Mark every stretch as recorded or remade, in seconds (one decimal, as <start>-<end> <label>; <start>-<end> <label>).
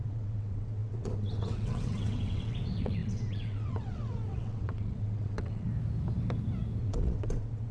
0.0-5.7 remade; 5.7-6.8 recorded; 6.8-7.7 remade